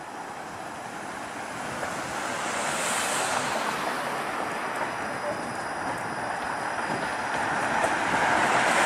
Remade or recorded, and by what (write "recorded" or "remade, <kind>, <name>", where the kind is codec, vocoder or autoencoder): recorded